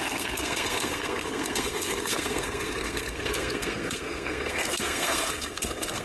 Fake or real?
fake